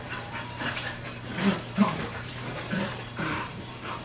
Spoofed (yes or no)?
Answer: yes